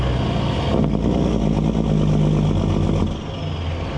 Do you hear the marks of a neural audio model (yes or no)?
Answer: no